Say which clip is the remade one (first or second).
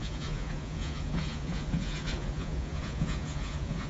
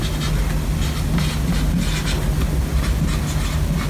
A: first